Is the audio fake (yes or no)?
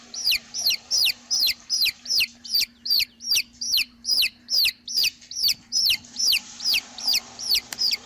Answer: yes